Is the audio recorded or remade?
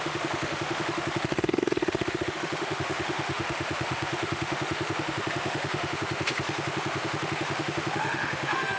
remade